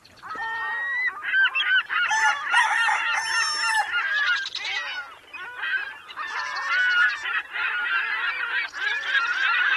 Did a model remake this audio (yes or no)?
no